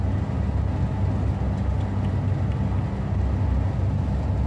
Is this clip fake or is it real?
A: real